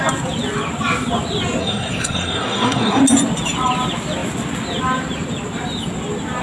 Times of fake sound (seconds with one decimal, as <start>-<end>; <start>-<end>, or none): 1.6-3.0